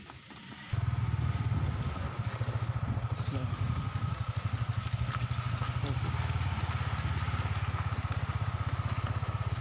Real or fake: real